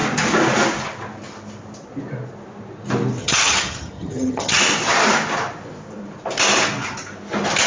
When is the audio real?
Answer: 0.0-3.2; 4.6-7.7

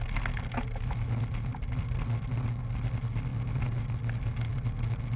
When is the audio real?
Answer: 0.0-5.2